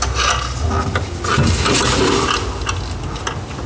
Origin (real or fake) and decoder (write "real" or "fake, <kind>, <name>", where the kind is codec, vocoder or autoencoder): real